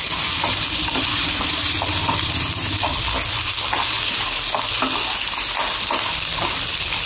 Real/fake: real